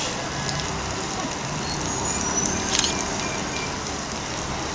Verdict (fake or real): real